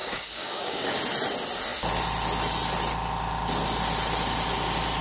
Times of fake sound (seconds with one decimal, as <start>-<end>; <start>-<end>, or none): 0.0-1.0